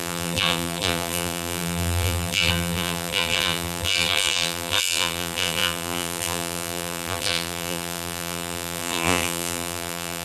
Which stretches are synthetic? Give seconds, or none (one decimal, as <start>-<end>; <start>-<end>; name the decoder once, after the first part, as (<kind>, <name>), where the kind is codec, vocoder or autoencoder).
0.0-10.2 (vocoder, BigVGAN v2)